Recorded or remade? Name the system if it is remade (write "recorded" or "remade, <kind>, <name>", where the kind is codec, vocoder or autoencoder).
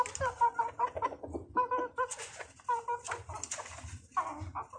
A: recorded